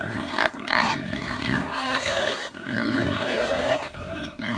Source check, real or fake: fake